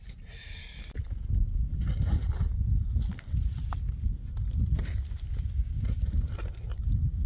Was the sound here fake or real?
real